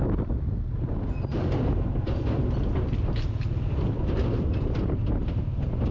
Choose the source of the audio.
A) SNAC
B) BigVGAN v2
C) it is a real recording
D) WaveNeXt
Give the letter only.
C